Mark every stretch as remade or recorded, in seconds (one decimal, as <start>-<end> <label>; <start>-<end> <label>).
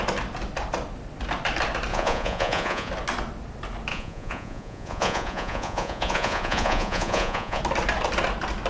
0.0-1.9 recorded; 1.9-2.9 remade; 2.9-3.9 recorded; 3.9-7.6 remade; 7.6-8.7 recorded